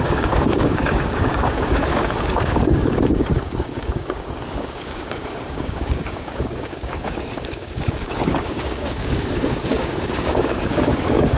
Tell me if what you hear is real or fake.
fake